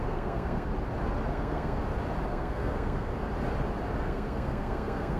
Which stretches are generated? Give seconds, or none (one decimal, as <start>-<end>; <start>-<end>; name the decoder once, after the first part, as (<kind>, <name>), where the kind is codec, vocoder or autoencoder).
0.0-0.7 (codec, SNAC); 1.3-1.8; 2.3-3.1; 4.0-5.2